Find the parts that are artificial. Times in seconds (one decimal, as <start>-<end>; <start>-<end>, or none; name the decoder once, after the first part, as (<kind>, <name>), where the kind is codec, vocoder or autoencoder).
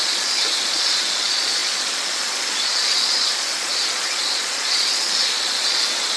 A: 0.0-6.2 (vocoder, Vocos)